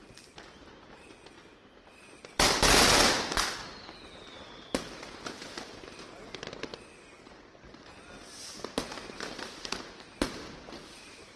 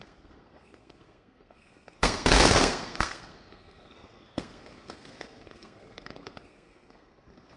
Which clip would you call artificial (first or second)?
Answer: second